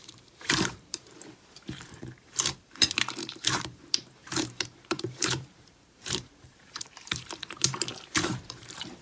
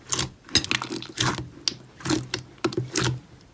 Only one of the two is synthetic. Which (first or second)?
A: first